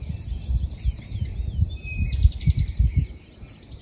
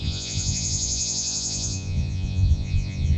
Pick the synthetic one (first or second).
second